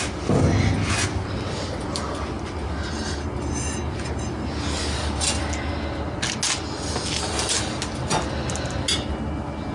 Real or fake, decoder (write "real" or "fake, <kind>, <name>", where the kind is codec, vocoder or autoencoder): real